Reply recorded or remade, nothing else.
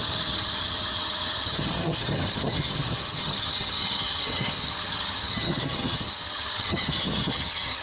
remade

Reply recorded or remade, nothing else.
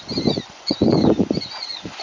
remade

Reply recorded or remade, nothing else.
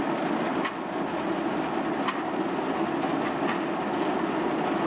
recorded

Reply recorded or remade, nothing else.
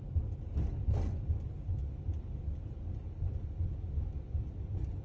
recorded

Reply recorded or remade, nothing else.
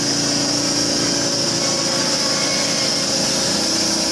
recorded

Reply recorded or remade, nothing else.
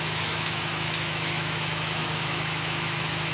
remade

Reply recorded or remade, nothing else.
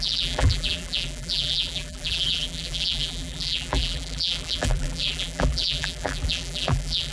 remade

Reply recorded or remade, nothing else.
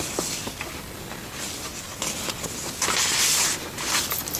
recorded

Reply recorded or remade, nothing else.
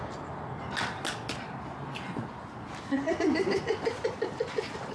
recorded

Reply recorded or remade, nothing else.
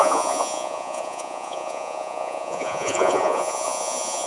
remade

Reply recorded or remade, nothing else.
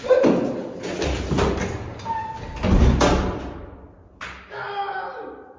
recorded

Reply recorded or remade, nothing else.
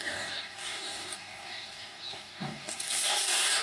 remade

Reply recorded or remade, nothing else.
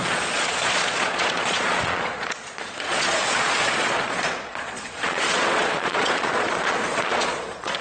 remade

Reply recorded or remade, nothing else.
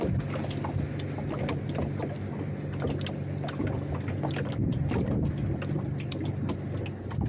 recorded